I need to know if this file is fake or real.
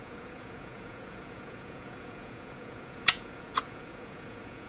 fake